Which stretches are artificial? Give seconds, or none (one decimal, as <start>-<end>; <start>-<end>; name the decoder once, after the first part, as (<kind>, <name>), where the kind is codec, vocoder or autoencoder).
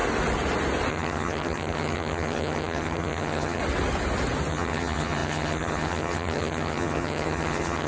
0.9-3.6 (vocoder, HiFi-GAN); 4.5-7.9